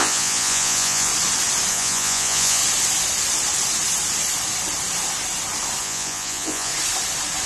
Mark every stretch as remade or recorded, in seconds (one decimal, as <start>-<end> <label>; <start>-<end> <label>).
0.0-1.1 remade; 1.1-1.7 recorded; 1.7-2.6 remade; 2.6-5.8 recorded; 5.8-6.7 remade; 6.7-7.5 recorded